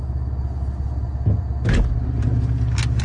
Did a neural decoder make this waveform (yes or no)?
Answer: no